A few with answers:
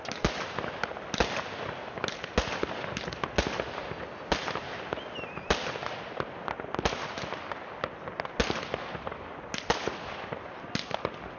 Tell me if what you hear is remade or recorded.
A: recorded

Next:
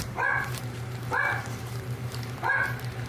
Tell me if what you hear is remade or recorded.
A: remade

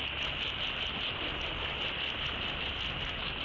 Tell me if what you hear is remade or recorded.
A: recorded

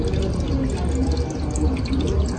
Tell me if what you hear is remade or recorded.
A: recorded